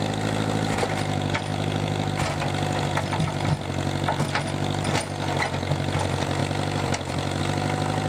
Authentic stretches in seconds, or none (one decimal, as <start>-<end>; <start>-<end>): 0.0-6.4; 7.4-8.1